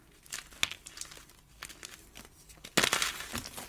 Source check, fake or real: real